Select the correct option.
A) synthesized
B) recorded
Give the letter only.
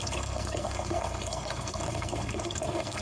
A